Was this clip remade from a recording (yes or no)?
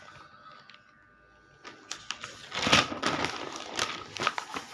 no